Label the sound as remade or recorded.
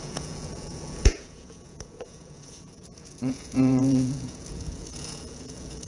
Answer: remade